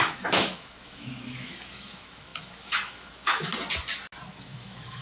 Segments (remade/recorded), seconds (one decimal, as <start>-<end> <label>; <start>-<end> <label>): 0.0-3.5 remade; 3.5-4.3 recorded; 4.3-5.0 remade